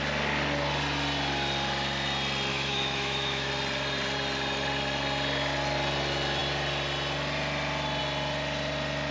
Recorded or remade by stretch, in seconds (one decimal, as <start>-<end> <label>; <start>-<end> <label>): 0.0-2.5 recorded; 2.5-3.5 remade; 3.5-9.1 recorded

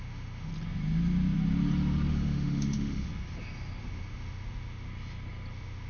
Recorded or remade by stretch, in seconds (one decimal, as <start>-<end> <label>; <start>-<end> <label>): 0.0-0.5 remade; 0.5-2.1 recorded; 2.1-3.1 remade; 3.1-3.8 recorded; 3.8-4.9 remade; 4.9-5.5 recorded; 5.5-5.9 remade